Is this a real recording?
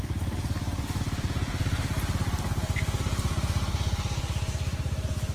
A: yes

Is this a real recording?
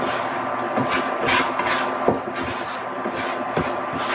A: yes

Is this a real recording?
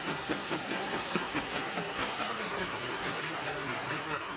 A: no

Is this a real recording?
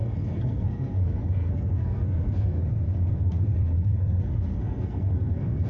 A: no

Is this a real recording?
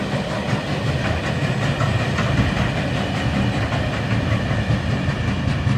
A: yes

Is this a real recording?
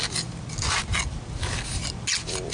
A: yes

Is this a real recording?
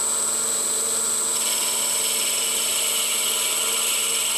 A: yes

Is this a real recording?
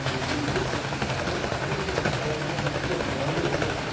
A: yes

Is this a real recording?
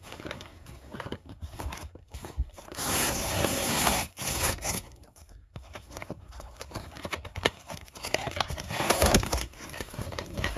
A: no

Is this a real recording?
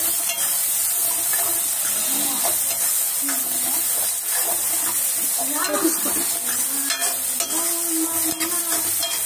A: yes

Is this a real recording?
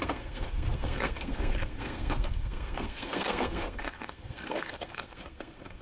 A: no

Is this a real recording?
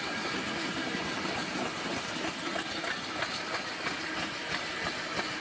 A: yes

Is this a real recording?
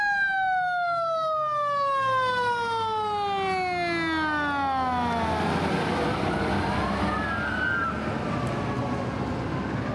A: yes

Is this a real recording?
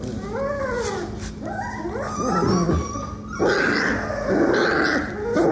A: yes